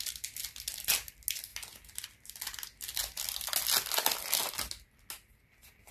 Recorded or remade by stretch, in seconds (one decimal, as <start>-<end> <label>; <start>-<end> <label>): 0.0-5.9 recorded